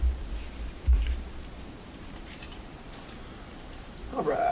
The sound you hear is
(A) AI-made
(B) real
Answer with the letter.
A